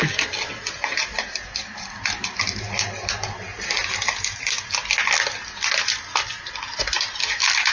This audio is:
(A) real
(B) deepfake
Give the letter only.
A